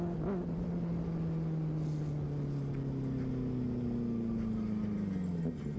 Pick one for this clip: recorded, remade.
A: recorded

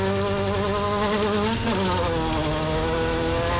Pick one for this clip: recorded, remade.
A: recorded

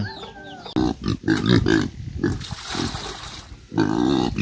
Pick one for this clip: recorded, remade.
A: recorded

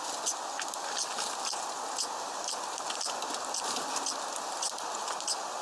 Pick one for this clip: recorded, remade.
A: recorded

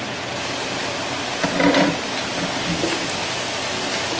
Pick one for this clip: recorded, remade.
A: recorded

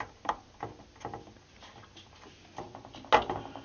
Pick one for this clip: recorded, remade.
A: recorded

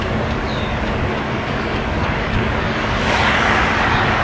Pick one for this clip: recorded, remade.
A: remade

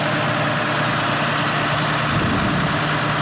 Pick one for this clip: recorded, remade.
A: recorded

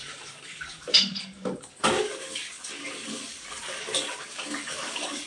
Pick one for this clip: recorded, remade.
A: remade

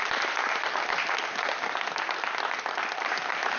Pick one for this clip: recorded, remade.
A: recorded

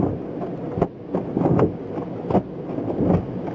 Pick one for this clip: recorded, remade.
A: recorded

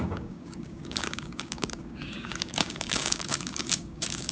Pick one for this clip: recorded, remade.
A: remade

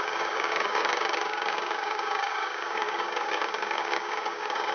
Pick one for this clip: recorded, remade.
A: remade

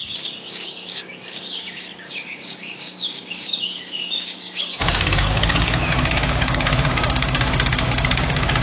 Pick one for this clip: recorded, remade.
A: remade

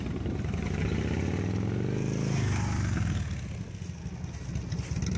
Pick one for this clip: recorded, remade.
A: recorded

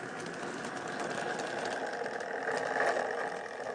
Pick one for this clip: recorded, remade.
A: recorded